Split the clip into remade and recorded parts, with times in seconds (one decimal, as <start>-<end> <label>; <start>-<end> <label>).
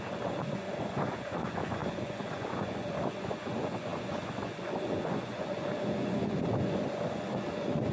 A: 0.0-7.9 remade